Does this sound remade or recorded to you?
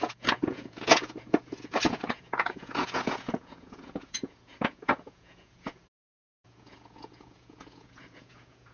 remade